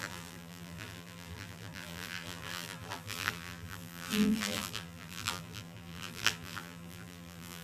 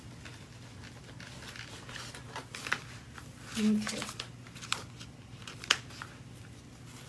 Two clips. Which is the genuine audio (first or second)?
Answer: second